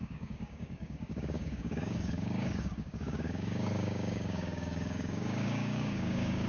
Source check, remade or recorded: remade